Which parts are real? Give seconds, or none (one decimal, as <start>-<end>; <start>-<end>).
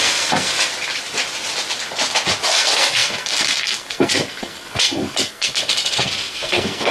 0.7-2.5